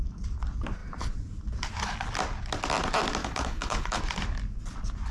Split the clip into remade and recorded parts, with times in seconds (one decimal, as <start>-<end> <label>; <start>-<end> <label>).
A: 0.0-3.2 recorded; 3.2-4.0 remade; 4.0-5.1 recorded

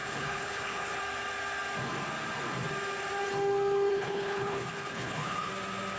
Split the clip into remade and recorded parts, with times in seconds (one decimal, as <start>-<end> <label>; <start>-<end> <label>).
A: 0.0-1.0 remade; 1.0-3.9 recorded; 3.9-5.5 remade; 5.5-6.0 recorded

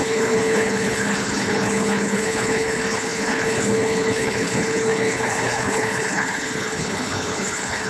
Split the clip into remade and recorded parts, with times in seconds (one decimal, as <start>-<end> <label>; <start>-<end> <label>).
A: 0.0-7.9 remade

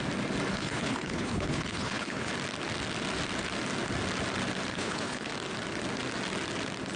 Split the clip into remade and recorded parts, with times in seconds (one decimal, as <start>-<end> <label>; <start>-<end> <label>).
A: 0.0-0.5 recorded; 0.5-2.3 remade; 2.3-4.7 recorded; 4.7-5.3 remade; 5.3-7.0 recorded

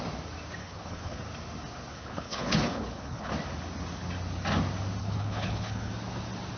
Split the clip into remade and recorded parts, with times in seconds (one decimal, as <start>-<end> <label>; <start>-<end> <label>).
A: 0.0-0.6 recorded; 0.6-1.2 remade; 1.2-1.9 recorded; 1.9-3.3 remade; 3.3-5.0 recorded; 5.0-5.9 remade; 5.9-6.6 recorded

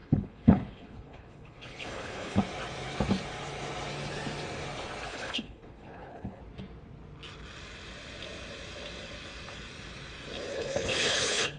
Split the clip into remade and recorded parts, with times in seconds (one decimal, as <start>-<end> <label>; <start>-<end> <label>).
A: 0.0-2.4 remade; 2.4-5.1 recorded; 5.1-6.4 remade; 6.4-10.5 recorded; 10.5-11.6 remade

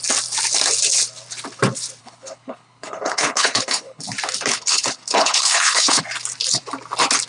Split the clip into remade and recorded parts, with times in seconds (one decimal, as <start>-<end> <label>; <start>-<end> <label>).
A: 0.0-2.0 recorded; 2.0-4.0 remade; 4.0-4.5 recorded; 4.5-6.0 remade; 6.0-7.3 recorded